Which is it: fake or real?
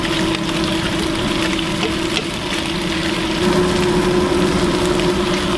real